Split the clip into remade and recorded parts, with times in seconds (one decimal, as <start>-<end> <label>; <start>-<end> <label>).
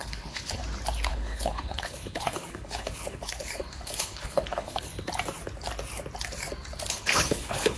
0.0-0.6 remade; 0.6-1.1 recorded; 1.1-4.9 remade; 4.9-6.9 recorded; 6.9-7.8 remade